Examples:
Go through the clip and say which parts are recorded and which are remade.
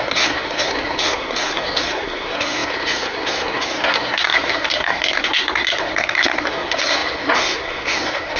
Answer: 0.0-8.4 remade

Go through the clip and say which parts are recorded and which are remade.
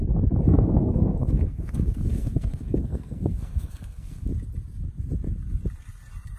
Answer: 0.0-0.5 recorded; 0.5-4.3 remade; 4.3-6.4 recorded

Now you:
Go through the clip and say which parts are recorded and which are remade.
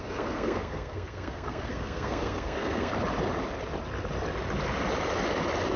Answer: 0.0-2.9 remade; 2.9-5.8 recorded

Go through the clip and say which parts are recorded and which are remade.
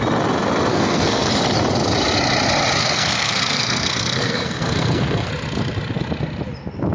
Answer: 0.0-0.7 recorded; 0.7-1.3 remade; 1.3-2.8 recorded; 2.8-5.3 remade; 5.3-6.9 recorded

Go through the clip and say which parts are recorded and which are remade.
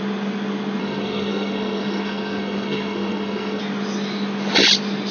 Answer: 0.0-0.8 recorded; 0.8-3.6 remade; 3.6-5.1 recorded